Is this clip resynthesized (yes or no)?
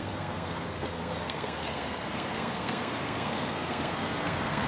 yes